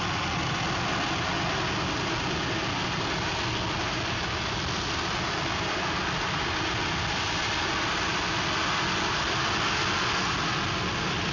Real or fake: real